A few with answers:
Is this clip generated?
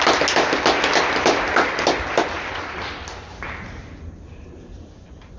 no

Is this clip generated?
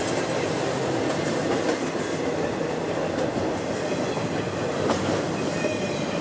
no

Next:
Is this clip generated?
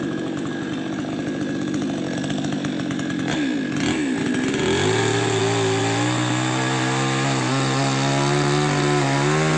no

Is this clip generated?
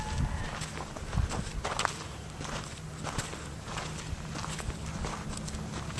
no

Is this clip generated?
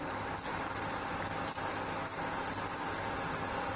no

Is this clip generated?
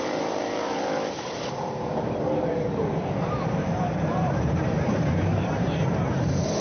yes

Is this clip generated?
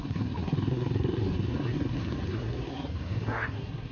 yes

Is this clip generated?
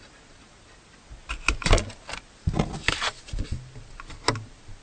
no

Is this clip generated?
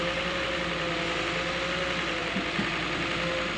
no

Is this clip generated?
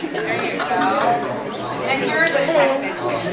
no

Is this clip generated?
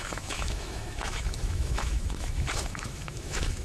yes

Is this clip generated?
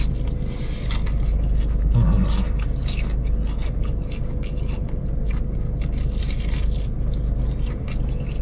no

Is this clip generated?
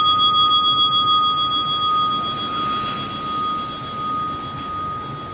no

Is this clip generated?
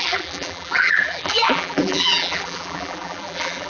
yes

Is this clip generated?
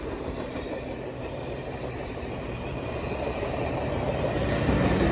yes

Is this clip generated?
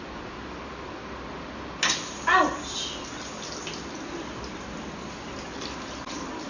no